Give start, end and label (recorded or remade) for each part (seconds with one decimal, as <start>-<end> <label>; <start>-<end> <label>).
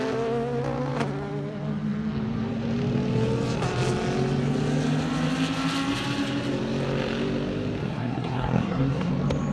0.0-7.8 recorded; 7.8-9.1 remade; 9.1-9.5 recorded